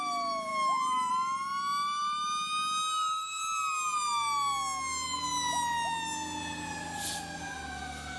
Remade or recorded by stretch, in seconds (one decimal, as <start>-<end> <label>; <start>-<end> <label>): 0.0-8.2 recorded